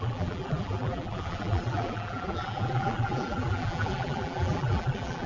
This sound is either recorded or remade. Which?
remade